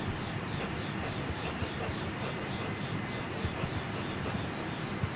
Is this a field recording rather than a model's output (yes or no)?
yes